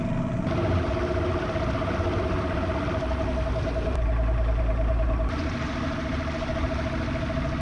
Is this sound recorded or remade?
recorded